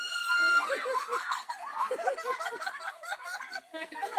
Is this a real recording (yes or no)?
no